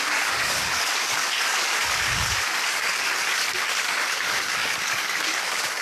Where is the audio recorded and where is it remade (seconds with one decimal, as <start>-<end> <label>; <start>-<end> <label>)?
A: 0.0-5.8 remade